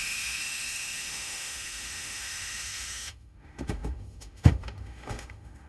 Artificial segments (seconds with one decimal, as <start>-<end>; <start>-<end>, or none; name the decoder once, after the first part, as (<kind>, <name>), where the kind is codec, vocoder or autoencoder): 0.0-5.7 (autoencoder, DAC-VAE)